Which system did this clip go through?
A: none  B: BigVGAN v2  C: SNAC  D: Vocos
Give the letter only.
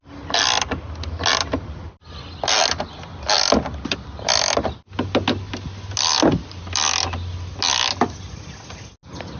A